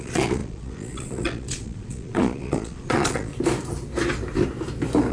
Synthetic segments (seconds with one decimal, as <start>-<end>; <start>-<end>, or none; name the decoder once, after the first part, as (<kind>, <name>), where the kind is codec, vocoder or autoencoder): 0.0-3.3 (vocoder, Vocos)